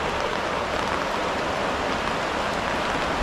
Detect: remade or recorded remade